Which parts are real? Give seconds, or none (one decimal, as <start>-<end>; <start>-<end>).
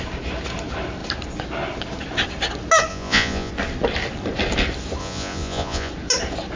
0.0-2.9; 3.5-5.0; 5.9-6.6